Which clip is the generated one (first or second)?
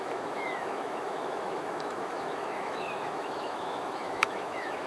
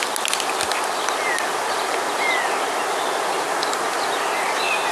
first